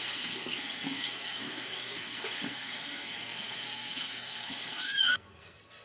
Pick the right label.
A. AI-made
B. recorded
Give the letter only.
A